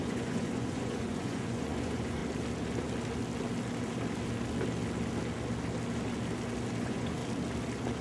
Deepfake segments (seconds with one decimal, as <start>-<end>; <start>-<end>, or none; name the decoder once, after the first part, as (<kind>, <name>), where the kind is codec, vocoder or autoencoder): 0.0-2.2 (vocoder, Vocos); 6.8-7.2